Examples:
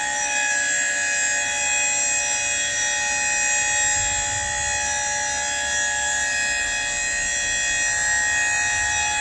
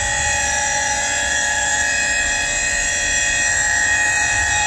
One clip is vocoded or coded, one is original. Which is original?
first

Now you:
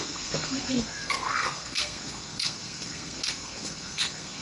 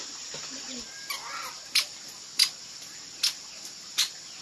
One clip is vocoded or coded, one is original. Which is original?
second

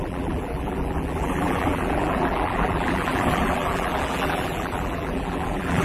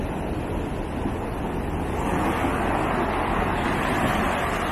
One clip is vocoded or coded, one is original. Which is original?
second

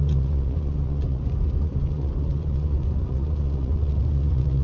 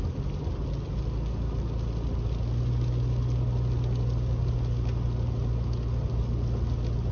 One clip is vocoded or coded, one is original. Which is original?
second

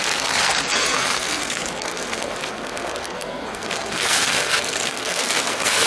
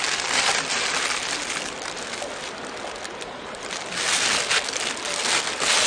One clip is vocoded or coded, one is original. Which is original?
second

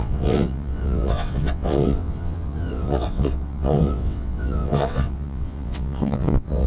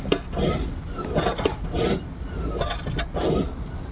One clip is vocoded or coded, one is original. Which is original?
second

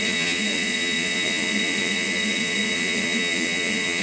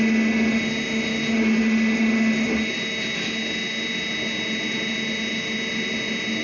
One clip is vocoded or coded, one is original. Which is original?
second